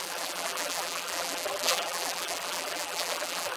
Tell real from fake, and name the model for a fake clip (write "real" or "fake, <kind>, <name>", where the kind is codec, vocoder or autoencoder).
fake, vocoder, BigVGAN v2